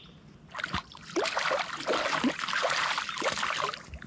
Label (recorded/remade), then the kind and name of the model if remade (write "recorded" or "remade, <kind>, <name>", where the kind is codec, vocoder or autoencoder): remade, vocoder, BigVGAN v2